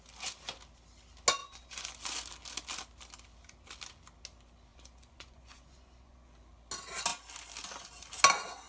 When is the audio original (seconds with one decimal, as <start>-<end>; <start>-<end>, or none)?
0.0-1.4; 1.9-4.7; 6.3-8.7